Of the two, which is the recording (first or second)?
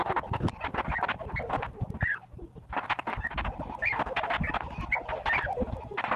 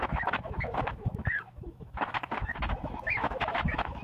first